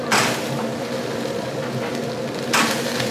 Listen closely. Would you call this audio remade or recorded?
remade